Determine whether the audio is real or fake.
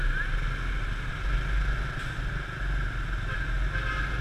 real